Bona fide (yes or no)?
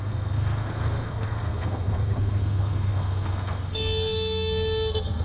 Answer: no